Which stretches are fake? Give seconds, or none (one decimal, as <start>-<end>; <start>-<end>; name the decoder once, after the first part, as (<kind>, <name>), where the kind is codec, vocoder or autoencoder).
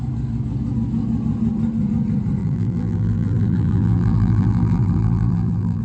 2.4-5.8 (vocoder, BigVGAN v2)